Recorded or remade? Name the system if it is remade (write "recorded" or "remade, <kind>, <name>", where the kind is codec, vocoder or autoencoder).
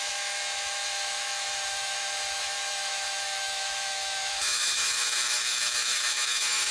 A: remade, autoencoder, DAC-VAE